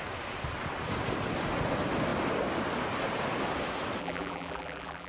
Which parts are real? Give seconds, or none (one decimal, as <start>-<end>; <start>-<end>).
0.0-4.0